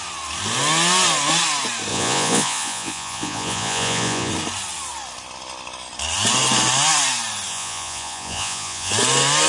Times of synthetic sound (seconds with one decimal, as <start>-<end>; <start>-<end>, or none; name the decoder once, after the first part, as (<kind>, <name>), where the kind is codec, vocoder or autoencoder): 1.9-4.3 (vocoder, Vocos); 7.5-8.9